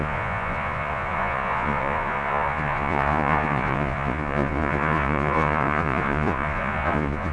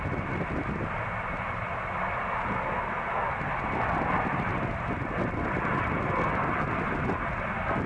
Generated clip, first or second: first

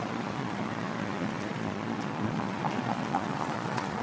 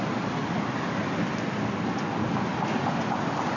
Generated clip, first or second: first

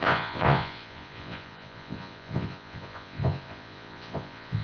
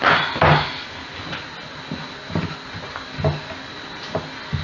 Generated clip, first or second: first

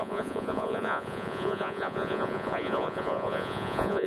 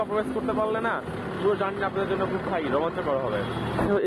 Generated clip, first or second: first